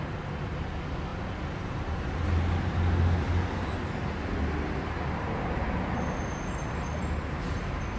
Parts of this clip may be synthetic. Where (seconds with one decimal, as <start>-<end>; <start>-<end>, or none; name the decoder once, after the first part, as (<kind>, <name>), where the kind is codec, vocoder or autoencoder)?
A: none